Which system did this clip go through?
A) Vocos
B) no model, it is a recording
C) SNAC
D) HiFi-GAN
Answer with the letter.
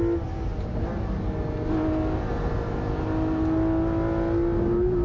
B